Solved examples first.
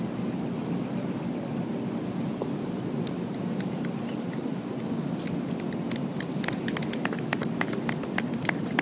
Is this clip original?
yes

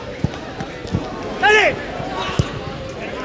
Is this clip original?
yes